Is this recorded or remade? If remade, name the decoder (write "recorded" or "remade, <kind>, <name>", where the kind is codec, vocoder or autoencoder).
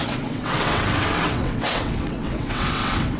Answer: remade, vocoder, WaveNeXt